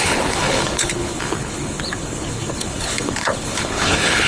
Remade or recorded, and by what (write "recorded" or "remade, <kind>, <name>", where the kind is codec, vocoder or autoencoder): remade, codec, HILCodec